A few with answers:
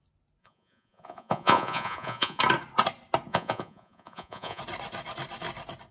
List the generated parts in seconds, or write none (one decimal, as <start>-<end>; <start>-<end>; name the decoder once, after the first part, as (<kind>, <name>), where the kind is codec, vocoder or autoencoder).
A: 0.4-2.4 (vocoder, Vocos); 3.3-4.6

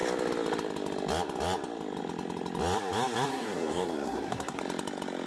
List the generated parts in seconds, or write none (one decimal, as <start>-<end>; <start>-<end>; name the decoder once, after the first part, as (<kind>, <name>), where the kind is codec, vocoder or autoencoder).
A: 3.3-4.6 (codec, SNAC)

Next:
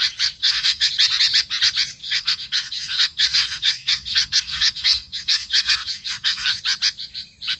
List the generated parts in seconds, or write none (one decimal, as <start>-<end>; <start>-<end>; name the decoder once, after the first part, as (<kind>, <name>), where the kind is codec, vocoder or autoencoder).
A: 0.4-0.9 (codec, SNAC); 2.0-6.6

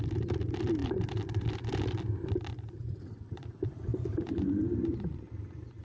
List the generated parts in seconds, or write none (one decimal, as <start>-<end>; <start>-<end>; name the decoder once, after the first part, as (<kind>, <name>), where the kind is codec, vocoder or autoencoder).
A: 0.0-0.8 (vocoder, BigVGAN v2); 2.9-3.9; 4.5-5.8

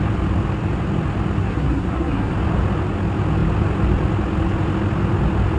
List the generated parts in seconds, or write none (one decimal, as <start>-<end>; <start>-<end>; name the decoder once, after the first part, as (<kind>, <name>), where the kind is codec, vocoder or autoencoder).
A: 1.4-2.3 (codec, SNAC)